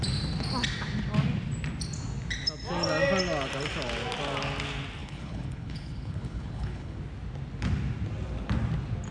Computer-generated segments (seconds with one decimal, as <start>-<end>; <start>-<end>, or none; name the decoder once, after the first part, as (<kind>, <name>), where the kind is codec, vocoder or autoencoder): 5.0-7.0 (codec, HILCodec)